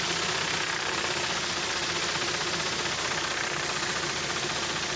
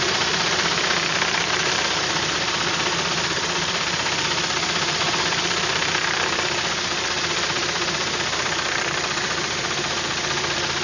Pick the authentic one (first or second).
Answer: first